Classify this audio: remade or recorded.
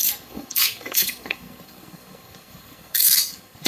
remade